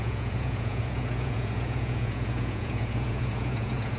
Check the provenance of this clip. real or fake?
fake